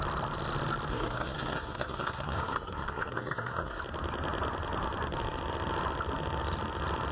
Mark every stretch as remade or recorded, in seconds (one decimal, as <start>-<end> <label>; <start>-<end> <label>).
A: 0.0-0.9 recorded; 0.9-3.8 remade; 3.8-7.1 recorded